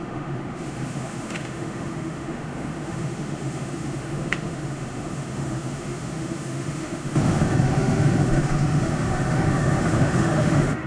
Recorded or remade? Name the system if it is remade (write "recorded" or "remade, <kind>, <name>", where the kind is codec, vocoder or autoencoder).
remade, autoencoder, DAC-VAE